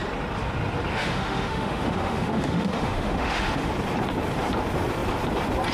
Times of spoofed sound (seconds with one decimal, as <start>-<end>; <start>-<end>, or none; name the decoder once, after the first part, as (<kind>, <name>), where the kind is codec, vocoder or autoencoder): 0.9-3.7 (autoencoder, DAC-VAE)